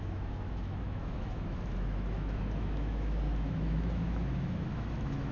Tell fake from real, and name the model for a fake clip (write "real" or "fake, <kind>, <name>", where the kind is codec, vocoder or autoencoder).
fake, autoencoder, DAC-VAE